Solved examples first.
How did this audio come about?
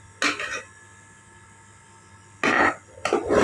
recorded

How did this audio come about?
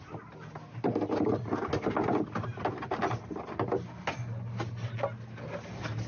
recorded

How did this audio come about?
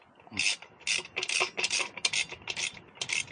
recorded